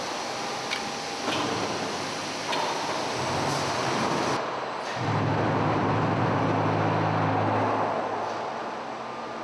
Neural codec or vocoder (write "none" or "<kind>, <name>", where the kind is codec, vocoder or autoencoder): none